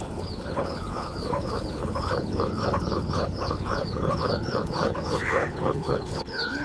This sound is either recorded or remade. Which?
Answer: remade